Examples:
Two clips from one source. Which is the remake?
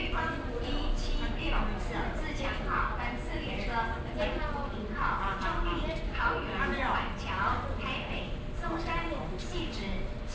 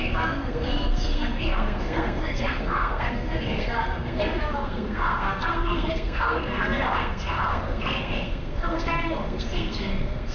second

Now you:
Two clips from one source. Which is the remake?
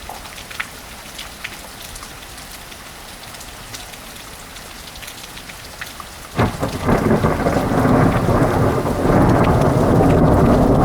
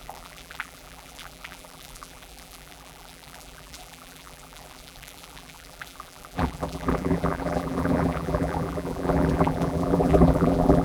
second